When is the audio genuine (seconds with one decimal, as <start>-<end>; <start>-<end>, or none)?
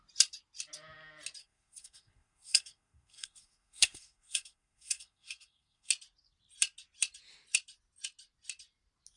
0.0-1.4; 5.9-9.2